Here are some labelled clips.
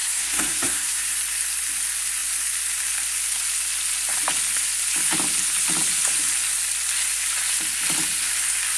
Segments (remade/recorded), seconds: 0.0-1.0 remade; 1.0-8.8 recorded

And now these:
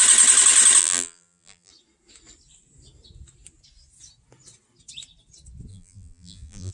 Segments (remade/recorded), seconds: 0.0-0.8 recorded; 0.8-1.7 remade; 1.7-5.7 recorded; 5.7-6.7 remade

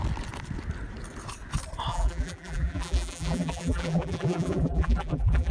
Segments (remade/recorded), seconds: 0.0-1.9 recorded; 1.9-5.5 remade

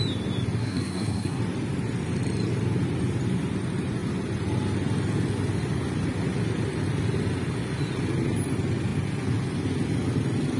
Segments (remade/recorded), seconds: 0.0-0.6 recorded; 0.6-1.4 remade; 1.4-10.6 recorded

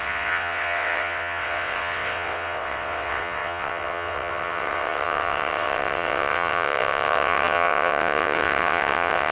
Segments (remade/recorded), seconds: 0.0-9.3 remade

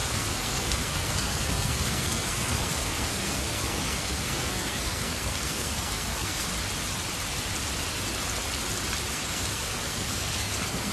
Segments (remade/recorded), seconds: 0.0-6.5 remade; 6.5-9.1 recorded; 9.1-10.9 remade

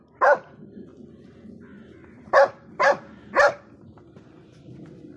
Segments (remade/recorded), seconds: 0.0-5.2 recorded

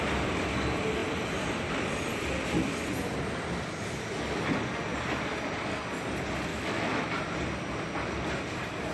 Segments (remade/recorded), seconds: 0.0-6.5 recorded; 6.5-7.1 remade; 7.1-8.9 recorded